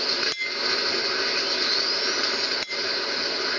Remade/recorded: recorded